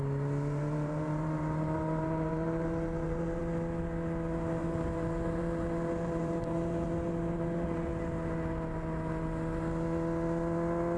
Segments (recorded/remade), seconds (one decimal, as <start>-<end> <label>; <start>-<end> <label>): 0.0-3.4 remade; 3.4-4.5 recorded; 4.5-7.9 remade; 7.9-11.0 recorded